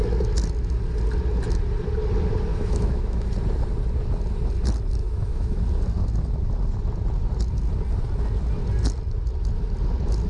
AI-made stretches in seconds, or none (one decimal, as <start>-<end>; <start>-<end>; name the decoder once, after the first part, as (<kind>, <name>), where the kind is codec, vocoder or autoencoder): 2.5-3.3 (autoencoder, DAC-VAE); 5.0-5.6

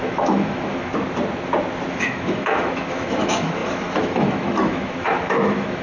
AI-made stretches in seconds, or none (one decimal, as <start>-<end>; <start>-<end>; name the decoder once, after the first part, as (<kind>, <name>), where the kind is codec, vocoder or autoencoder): 0.0-0.9 (autoencoder, DAC-VAE); 1.9-5.8

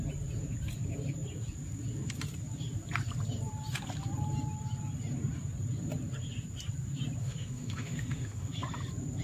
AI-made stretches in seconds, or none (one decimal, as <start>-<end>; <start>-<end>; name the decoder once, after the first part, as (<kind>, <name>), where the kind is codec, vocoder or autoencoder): 7.2-8.5 (autoencoder, DAC-VAE)

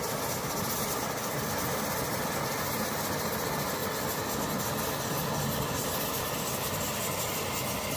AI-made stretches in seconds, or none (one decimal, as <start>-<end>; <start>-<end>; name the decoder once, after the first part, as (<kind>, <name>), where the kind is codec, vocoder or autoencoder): none

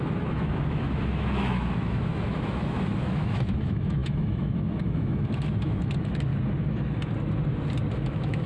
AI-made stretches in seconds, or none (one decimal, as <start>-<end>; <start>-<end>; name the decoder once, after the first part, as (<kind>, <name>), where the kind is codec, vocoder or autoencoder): 0.0-6.3 (autoencoder, DAC-VAE); 7.9-8.5